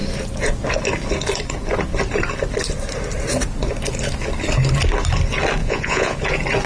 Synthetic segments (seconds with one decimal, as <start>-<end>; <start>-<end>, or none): 5.6-6.2

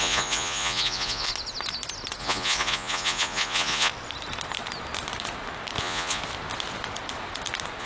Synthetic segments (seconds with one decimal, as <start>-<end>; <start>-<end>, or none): 0.0-1.3; 2.2-3.9; 5.8-6.2